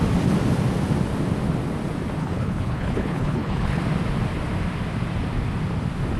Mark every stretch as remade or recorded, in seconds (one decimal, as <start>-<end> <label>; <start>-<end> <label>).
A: 0.0-2.2 recorded; 2.2-3.8 remade; 3.8-6.2 recorded